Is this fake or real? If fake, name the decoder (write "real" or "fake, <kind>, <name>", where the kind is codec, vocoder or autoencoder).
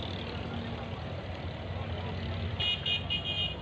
real